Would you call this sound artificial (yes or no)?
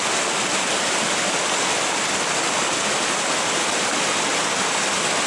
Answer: no